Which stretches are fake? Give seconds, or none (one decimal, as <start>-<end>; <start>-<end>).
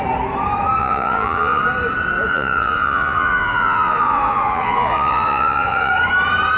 0.8-1.6; 2.3-5.9